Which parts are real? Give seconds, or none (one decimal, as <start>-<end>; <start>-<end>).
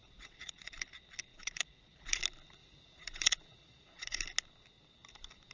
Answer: 0.7-1.3; 2.2-2.6; 4.2-5.5